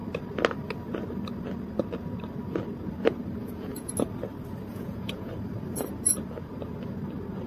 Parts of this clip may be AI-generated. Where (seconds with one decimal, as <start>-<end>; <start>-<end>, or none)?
3.4-3.9; 4.7-5.3